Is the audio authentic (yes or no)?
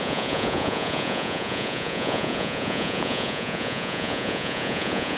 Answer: no